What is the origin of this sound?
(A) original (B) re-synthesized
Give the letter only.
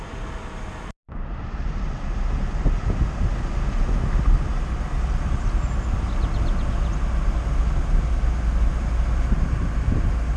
A